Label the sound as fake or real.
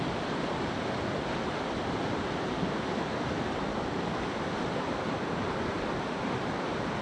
real